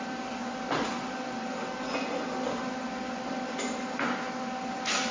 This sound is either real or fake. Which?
real